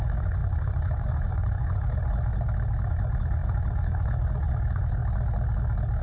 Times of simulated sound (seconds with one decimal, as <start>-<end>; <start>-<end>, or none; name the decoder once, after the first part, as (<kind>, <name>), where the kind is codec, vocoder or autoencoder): 0.0-2.3 (vocoder, Vocos); 2.9-5.0